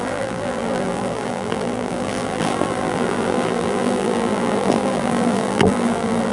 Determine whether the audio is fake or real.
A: fake